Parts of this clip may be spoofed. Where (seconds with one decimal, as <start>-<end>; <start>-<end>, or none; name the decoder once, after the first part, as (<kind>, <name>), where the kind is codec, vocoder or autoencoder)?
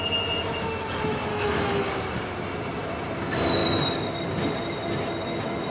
1.3-1.9 (autoencoder, DAC-VAE)